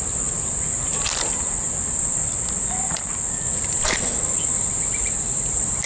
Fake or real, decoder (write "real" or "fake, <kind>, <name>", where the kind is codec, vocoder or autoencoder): real